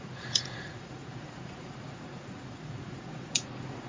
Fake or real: fake